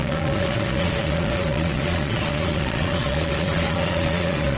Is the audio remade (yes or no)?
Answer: yes